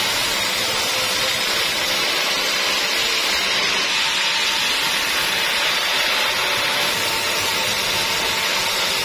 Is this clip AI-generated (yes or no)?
no